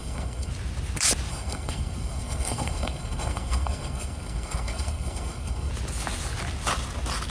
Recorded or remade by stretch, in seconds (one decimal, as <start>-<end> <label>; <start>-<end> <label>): 0.0-0.5 remade; 0.5-1.3 recorded; 1.3-5.7 remade; 5.7-7.3 recorded